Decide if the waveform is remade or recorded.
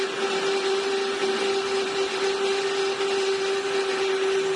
recorded